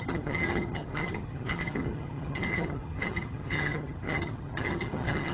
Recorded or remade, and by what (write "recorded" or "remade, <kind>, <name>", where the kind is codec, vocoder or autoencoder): remade, vocoder, HiFi-GAN